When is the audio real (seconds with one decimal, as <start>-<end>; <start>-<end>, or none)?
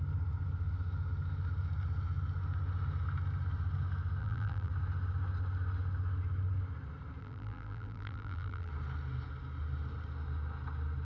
0.0-4.2; 4.7-7.2; 8.7-11.0